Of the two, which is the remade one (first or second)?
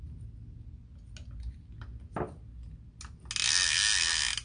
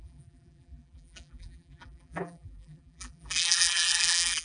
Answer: second